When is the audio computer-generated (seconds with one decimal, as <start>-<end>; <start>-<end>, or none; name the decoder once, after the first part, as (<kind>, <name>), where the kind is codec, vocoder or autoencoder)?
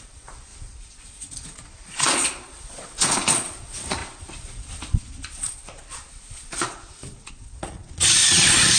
0.0-8.8 (vocoder, Vocos)